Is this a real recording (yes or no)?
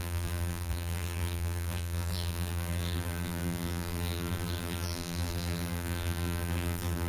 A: no